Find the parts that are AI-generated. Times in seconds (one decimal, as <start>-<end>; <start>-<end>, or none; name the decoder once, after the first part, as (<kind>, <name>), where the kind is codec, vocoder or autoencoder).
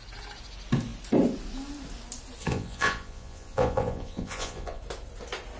2.4-4.8 (vocoder, Vocos)